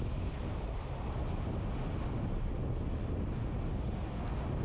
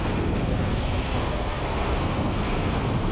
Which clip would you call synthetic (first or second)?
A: second